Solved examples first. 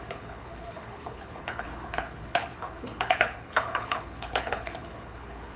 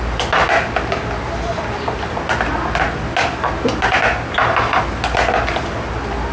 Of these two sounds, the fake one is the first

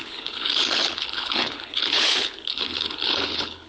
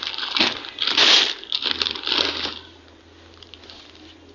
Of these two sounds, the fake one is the first